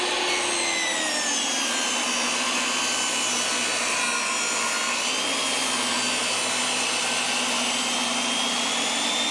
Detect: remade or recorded recorded